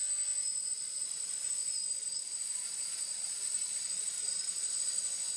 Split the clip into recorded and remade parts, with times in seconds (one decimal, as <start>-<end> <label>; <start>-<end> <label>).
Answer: 0.0-0.7 recorded; 0.7-1.5 remade; 1.5-1.9 recorded; 1.9-5.0 remade; 5.0-5.4 recorded